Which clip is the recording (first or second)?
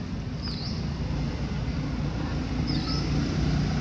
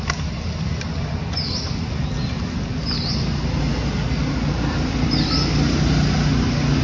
second